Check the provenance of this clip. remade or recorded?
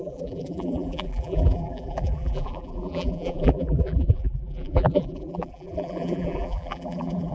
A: remade